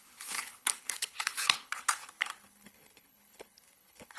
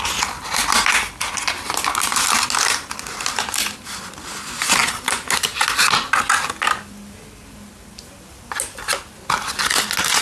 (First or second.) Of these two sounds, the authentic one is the second